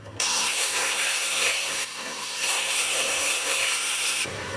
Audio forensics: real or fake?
fake